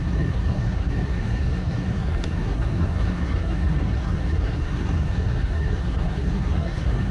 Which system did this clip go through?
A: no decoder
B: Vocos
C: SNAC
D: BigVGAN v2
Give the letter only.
C